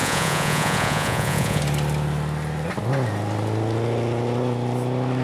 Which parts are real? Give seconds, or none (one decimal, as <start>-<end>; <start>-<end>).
1.6-5.2